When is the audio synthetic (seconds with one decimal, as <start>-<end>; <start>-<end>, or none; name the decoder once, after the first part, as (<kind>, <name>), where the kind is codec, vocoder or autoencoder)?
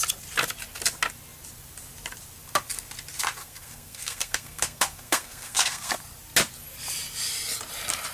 3.4-6.0 (codec, SNAC)